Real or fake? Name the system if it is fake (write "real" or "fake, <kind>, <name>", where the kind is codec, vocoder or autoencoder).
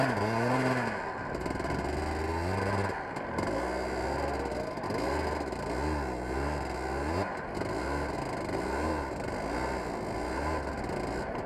real